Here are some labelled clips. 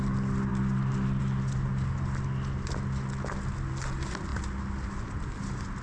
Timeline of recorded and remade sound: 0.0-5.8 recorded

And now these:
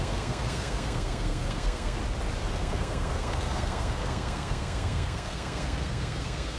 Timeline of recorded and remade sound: 0.0-2.0 remade; 2.0-2.5 recorded; 2.5-6.6 remade

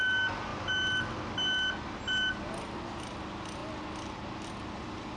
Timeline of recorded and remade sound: 0.0-5.2 recorded

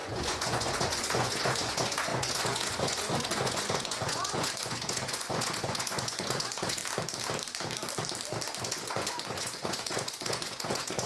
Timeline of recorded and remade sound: 0.0-6.8 remade; 6.8-8.6 recorded; 8.6-11.1 remade

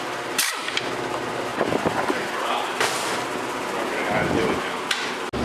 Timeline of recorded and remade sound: 0.0-1.5 recorded; 1.5-4.7 remade; 4.7-5.4 recorded

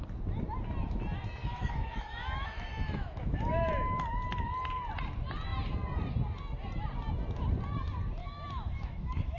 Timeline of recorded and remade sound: 0.0-1.4 recorded; 1.4-3.7 remade; 3.7-8.2 recorded; 8.2-9.4 remade

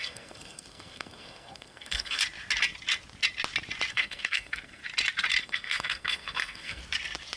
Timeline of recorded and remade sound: 0.0-2.2 remade; 2.2-3.9 recorded; 3.9-4.8 remade; 4.8-5.4 recorded; 5.4-6.8 remade; 6.8-7.4 recorded